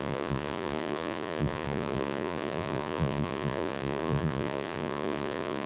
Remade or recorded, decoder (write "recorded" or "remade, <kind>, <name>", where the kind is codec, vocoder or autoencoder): remade, vocoder, Vocos